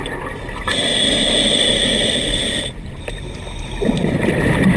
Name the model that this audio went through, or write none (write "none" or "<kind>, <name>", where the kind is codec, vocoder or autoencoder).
none